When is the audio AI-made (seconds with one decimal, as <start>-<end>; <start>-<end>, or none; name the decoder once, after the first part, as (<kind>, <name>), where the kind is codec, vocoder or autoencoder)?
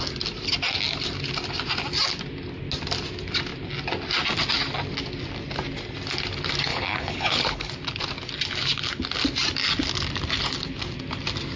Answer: 6.7-7.7 (codec, HILCodec)